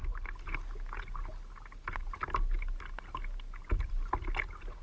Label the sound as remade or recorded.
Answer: recorded